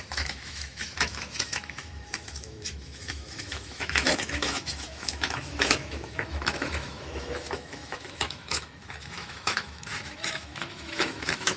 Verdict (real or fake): fake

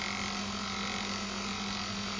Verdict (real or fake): real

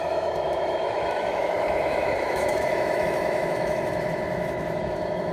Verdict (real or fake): fake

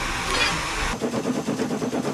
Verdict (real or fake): real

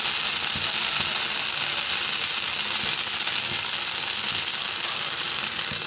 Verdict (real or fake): real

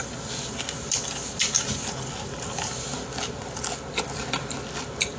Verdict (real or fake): real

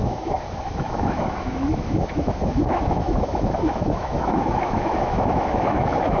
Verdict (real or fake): fake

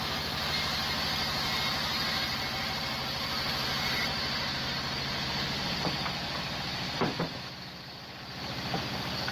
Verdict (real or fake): real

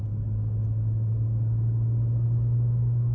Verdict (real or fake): real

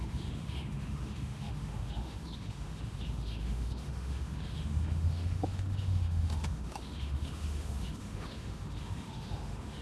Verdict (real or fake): fake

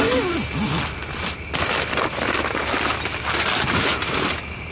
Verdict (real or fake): real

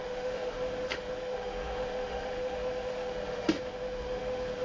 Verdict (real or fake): fake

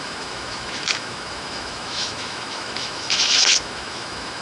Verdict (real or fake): fake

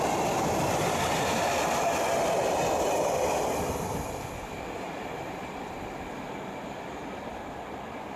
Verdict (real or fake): real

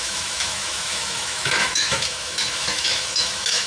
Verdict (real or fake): fake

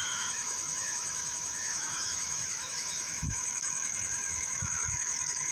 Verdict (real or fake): fake